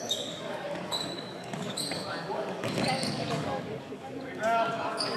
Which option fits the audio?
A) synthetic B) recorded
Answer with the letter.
A